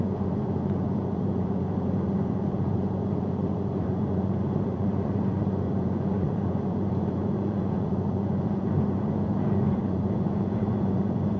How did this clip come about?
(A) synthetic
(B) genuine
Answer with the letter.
A